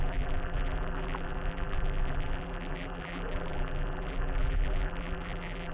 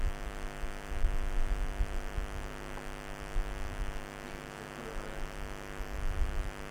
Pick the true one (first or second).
second